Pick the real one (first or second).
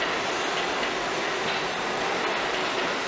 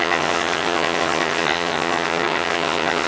first